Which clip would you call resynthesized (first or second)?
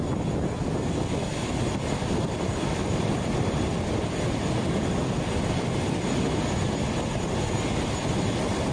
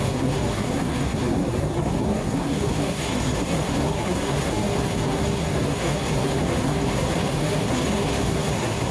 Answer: second